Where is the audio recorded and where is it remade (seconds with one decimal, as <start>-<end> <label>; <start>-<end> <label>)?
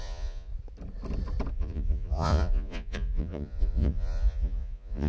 0.0-0.5 remade; 0.5-1.5 recorded; 1.5-5.1 remade